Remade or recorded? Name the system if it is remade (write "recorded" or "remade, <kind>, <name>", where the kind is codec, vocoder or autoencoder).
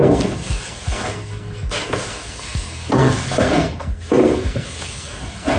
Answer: remade, codec, SNAC